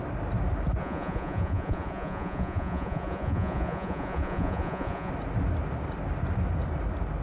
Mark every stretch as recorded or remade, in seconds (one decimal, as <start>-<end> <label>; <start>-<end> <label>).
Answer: 0.0-0.8 recorded; 0.8-5.1 remade; 5.1-7.2 recorded